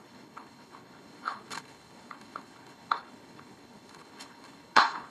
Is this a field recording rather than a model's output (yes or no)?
no